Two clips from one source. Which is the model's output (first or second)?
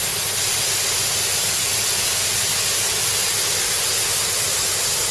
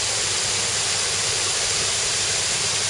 second